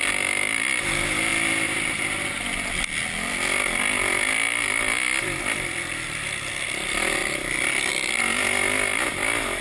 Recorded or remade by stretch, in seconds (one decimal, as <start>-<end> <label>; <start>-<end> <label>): 0.0-9.6 recorded